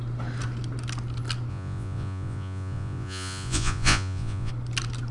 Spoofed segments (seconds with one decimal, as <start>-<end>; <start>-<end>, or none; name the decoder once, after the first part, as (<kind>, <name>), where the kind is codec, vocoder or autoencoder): 1.5-4.5 (vocoder, Vocos)